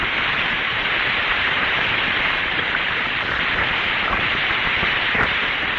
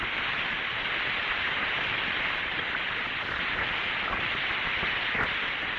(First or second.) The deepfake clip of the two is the first